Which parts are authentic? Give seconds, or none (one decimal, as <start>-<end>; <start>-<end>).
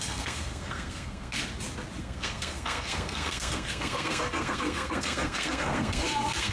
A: 1.4-2.0